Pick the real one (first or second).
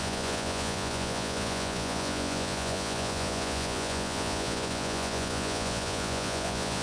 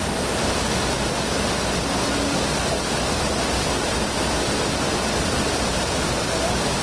second